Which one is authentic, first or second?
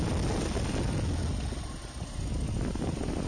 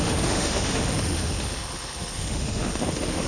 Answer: first